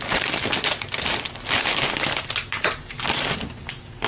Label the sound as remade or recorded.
recorded